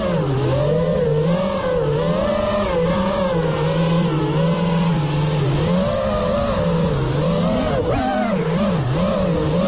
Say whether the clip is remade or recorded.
recorded